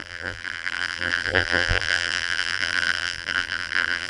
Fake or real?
fake